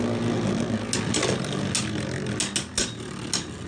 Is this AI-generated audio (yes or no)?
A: no